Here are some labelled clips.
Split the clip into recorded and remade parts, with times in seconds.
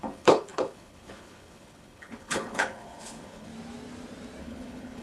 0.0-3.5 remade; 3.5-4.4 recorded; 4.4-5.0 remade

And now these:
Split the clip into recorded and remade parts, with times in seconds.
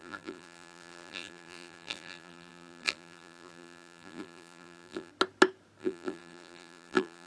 0.0-5.1 remade; 5.1-5.8 recorded; 5.8-7.3 remade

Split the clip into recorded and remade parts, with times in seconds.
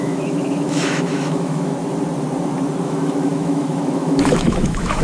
0.0-1.7 remade; 1.7-2.8 recorded; 2.8-5.0 remade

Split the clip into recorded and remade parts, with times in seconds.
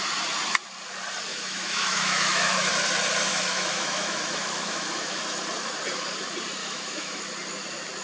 0.0-1.3 recorded; 1.3-2.7 remade; 2.7-3.3 recorded; 3.3-5.2 remade; 5.2-6.6 recorded; 6.6-7.2 remade; 7.2-8.0 recorded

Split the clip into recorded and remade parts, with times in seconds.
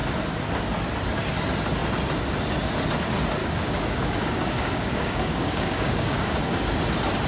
0.0-3.4 recorded; 3.4-6.4 remade; 6.4-7.3 recorded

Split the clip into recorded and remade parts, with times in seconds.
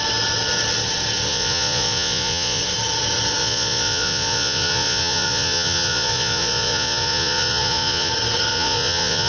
0.0-1.3 recorded; 1.3-2.6 remade; 2.6-3.4 recorded; 3.4-8.1 remade; 8.1-8.5 recorded; 8.5-9.3 remade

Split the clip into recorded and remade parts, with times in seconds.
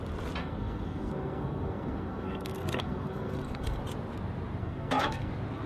0.0-0.4 recorded; 0.4-3.8 remade; 3.8-4.6 recorded; 4.6-5.3 remade; 5.3-5.7 recorded